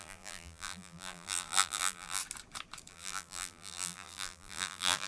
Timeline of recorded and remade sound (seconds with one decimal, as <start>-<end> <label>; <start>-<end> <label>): 0.0-2.2 remade; 2.2-2.9 recorded; 2.9-5.1 remade